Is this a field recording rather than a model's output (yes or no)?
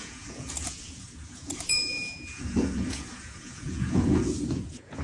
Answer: no